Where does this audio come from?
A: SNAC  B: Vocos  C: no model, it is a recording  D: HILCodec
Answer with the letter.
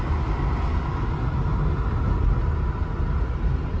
C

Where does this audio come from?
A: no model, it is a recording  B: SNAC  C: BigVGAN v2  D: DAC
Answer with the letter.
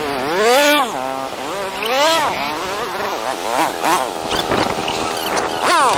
A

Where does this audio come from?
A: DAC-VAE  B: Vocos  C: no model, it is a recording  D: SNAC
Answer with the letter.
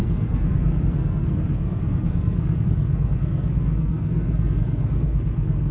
D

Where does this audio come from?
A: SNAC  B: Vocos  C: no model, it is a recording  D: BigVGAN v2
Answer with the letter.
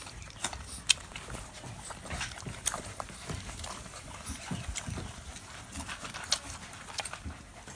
C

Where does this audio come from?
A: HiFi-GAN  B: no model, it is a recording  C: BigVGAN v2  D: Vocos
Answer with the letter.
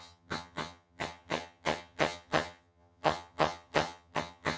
A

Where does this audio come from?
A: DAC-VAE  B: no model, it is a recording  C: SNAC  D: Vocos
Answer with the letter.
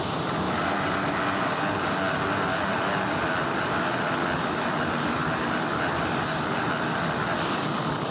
B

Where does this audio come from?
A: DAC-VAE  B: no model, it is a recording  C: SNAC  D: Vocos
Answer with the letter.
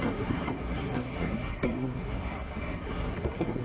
C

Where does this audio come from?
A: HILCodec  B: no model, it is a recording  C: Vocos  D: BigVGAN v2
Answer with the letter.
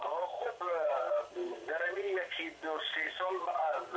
C